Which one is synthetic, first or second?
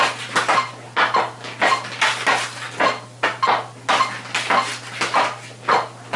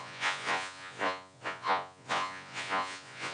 second